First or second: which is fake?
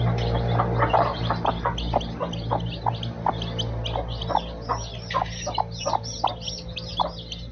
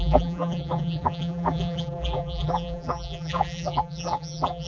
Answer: second